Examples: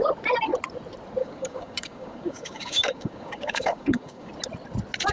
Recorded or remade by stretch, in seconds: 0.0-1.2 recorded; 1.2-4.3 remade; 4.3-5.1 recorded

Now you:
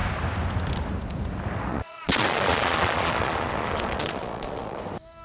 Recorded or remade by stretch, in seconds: 0.0-1.7 recorded; 1.7-4.8 remade; 4.8-5.2 recorded

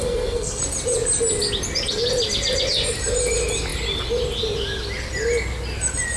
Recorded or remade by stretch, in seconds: 0.0-0.6 remade; 0.6-6.2 recorded

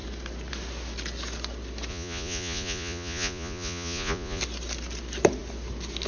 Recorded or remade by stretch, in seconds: 0.0-1.9 recorded; 1.9-4.4 remade; 4.4-6.1 recorded